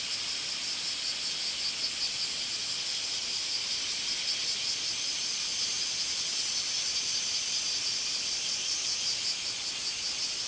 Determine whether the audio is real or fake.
real